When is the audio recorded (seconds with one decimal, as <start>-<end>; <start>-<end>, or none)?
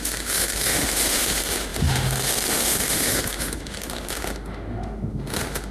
none